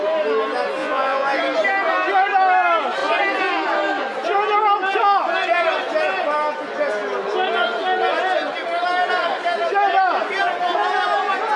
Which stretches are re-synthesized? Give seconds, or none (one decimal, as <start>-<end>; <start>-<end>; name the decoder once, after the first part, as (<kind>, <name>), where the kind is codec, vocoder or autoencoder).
0.8-1.4 (vocoder, Vocos)